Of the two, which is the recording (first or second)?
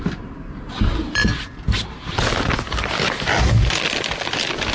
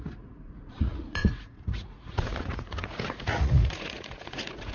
first